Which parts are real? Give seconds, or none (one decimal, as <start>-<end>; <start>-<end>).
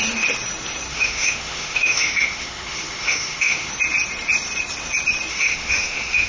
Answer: 0.0-0.9; 3.7-5.3